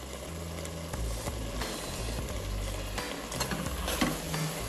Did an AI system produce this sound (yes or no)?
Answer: no